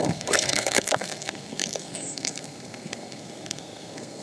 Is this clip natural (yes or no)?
no